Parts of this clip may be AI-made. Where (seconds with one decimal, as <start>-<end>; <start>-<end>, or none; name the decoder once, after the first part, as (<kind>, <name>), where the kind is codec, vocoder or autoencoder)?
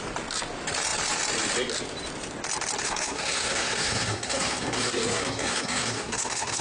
2.8-6.6 (codec, SNAC)